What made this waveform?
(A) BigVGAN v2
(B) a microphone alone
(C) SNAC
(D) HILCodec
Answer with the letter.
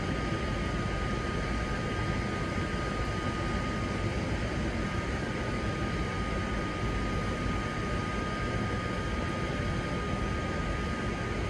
B